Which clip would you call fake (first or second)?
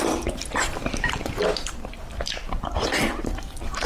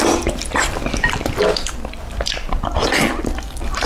first